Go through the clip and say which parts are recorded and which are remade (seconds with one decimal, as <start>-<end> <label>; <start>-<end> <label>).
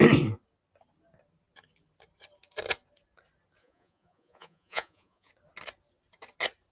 0.0-3.6 recorded; 3.6-5.3 remade; 5.3-6.7 recorded